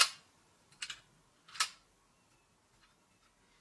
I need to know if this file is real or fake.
real